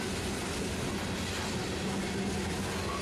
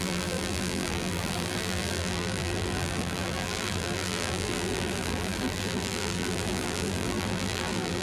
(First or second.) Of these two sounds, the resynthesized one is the second